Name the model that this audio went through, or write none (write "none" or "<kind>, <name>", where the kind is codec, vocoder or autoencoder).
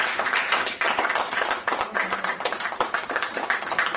vocoder, BigVGAN v2